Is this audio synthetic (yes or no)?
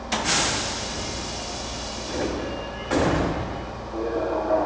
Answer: no